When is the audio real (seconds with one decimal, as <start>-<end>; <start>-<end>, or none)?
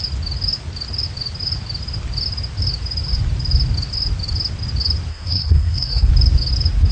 0.0-5.1; 6.1-6.9